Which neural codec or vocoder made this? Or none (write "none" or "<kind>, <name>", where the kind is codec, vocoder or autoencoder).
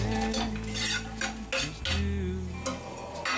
none